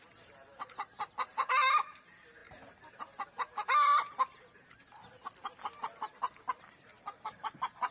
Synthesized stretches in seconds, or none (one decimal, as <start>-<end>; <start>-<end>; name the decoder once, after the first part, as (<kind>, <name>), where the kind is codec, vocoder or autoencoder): none